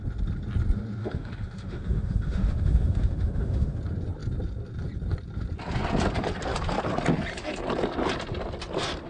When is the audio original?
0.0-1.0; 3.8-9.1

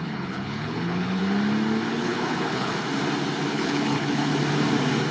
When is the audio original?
1.2-1.9; 2.7-3.5; 4.3-5.1

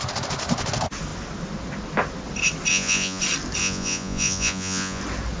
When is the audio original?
0.0-2.7; 3.2-3.6; 5.0-5.4

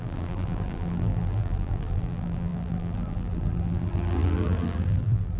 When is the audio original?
none

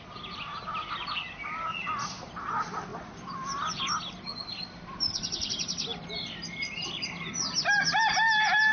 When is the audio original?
0.0-2.9; 3.8-4.5; 5.5-5.9; 7.3-8.7

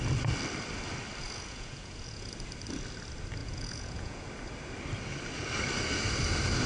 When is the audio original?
0.0-1.2; 2.3-3.4; 4.3-6.7

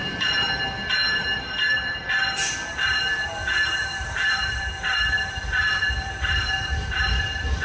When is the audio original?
none